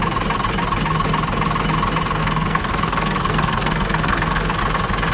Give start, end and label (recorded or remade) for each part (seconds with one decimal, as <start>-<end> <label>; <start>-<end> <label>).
0.0-2.2 recorded; 2.2-4.6 remade; 4.6-5.1 recorded